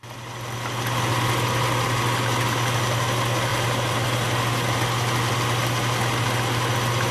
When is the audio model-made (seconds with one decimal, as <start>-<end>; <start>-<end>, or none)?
none